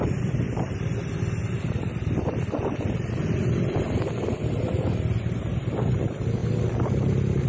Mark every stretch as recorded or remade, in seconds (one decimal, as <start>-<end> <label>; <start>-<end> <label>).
0.0-7.5 recorded